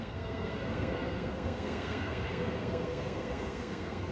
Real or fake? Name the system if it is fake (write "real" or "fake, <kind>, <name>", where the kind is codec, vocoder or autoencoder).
fake, codec, SNAC